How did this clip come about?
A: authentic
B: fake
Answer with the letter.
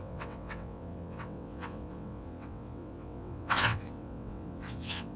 B